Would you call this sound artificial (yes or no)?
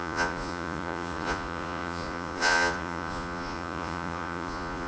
yes